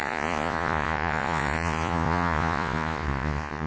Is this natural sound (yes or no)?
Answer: no